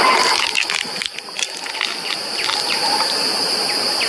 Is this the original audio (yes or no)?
yes